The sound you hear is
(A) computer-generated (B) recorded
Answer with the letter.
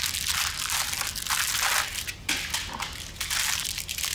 B